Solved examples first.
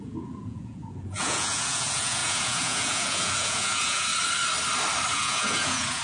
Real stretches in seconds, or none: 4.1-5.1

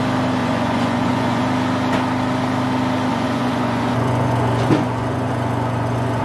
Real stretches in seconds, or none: 0.0-0.4; 1.4-3.1

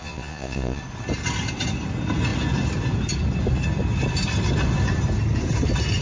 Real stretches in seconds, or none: 0.8-6.0